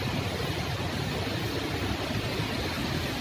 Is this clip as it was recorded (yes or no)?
yes